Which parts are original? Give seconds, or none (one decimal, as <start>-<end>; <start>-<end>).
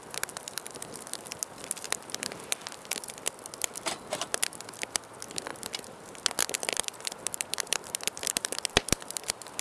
5.5-6.5